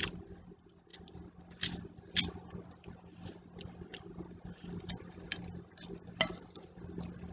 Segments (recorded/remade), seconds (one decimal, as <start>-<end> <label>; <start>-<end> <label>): 0.0-7.3 recorded